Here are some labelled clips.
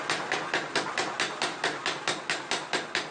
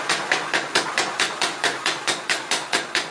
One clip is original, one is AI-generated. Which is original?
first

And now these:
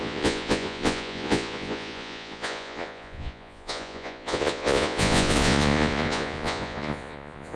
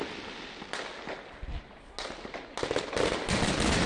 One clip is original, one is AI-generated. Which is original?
second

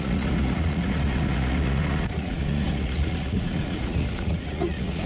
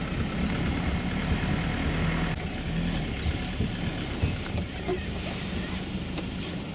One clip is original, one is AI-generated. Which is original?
second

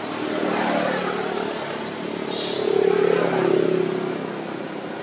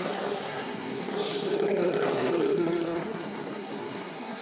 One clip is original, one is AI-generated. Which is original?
first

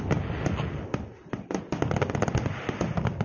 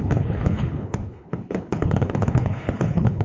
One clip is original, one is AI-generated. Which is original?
first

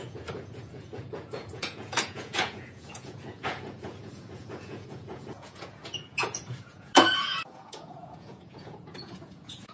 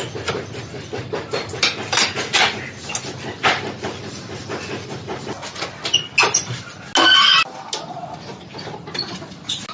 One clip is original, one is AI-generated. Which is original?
second